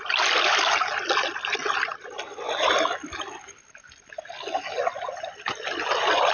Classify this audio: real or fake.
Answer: real